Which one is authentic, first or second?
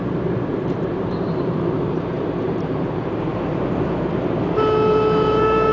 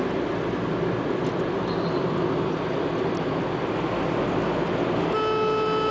second